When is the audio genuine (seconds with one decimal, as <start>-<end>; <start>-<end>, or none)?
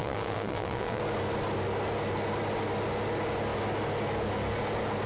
1.0-5.1